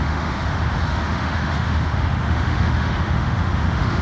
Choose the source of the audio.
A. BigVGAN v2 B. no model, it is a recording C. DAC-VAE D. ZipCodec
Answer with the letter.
C